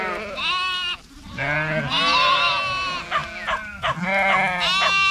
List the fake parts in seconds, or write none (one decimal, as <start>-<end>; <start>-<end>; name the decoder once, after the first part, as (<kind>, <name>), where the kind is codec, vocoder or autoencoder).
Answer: none